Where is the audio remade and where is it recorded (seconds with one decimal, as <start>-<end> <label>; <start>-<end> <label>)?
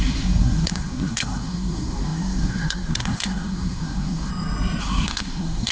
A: 0.0-4.3 remade; 4.3-4.8 recorded; 4.8-5.7 remade